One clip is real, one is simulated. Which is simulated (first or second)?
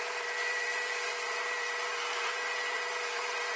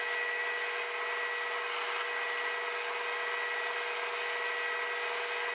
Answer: first